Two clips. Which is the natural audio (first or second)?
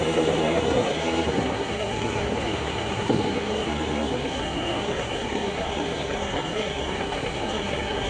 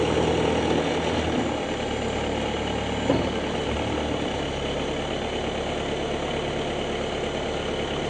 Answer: second